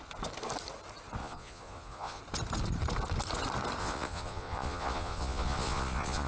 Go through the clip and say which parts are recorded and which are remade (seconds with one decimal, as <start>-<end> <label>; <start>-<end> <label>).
0.0-1.2 recorded; 1.2-2.2 remade; 2.2-3.8 recorded; 3.8-6.3 remade